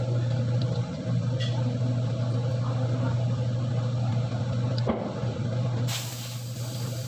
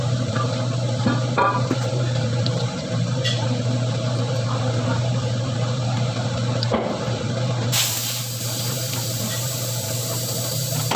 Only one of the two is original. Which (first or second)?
first